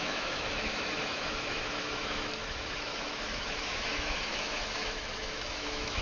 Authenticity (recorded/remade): remade